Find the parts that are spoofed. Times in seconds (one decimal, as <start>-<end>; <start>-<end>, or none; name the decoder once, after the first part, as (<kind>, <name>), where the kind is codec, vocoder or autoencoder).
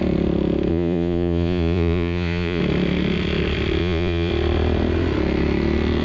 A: 0.7-2.6 (vocoder, Vocos); 3.8-4.3